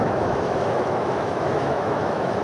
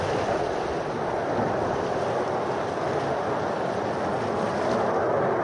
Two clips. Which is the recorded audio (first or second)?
second